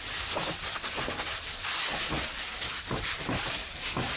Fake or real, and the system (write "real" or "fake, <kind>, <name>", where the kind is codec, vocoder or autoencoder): real